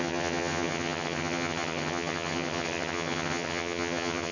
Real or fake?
fake